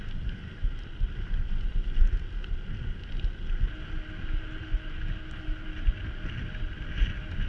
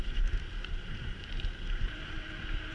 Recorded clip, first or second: first